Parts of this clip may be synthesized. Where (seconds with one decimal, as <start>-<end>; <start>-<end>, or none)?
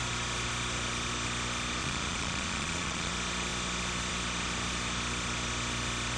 1.8-3.1